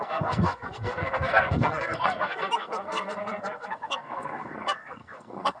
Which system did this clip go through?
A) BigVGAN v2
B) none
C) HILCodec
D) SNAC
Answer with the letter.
D